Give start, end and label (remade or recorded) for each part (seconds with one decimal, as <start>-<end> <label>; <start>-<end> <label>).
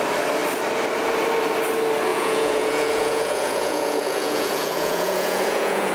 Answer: 0.0-2.1 recorded; 2.1-5.9 remade